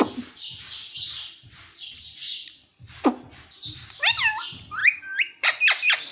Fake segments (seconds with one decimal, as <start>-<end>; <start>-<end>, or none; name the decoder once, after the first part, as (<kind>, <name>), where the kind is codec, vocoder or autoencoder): 0.8-4.1 (vocoder, BigVGAN v2); 4.8-6.1